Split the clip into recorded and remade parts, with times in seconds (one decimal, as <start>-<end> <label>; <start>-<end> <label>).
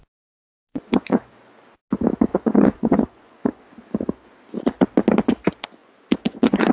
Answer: 0.0-0.7 recorded; 0.7-1.3 remade; 1.3-2.3 recorded; 2.3-3.6 remade; 3.6-5.8 recorded; 5.8-6.7 remade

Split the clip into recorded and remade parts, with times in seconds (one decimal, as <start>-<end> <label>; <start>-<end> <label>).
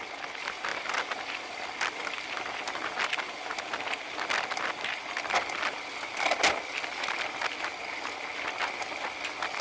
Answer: 0.0-9.6 recorded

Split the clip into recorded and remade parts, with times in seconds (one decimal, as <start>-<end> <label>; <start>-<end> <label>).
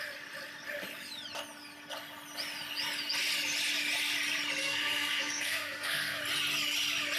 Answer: 0.0-4.6 recorded; 4.6-6.2 remade; 6.2-7.2 recorded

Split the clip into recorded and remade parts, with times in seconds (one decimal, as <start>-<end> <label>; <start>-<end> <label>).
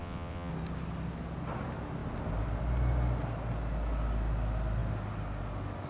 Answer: 0.0-0.5 remade; 0.5-5.9 recorded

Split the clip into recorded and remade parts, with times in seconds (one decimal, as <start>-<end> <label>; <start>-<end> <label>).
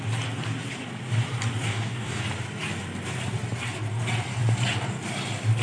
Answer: 0.0-1.6 recorded; 1.6-2.2 remade; 2.2-5.6 recorded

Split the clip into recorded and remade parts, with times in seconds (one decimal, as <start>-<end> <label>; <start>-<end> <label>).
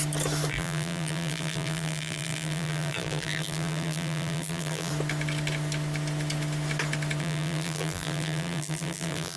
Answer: 0.0-0.5 recorded; 0.5-4.9 remade; 4.9-7.2 recorded; 7.2-9.4 remade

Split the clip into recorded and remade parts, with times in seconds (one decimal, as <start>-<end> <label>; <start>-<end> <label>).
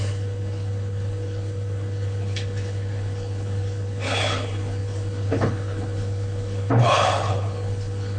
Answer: 0.0-8.2 remade